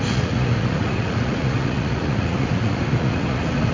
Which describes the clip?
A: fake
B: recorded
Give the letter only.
A